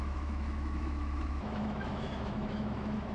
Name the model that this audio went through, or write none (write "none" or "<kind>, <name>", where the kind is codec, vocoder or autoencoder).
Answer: autoencoder, DAC-VAE